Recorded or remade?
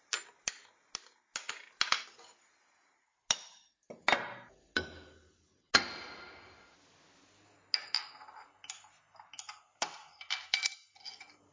recorded